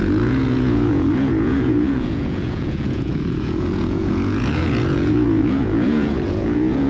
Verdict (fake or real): fake